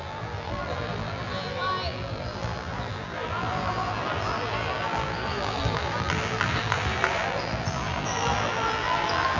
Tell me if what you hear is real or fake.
fake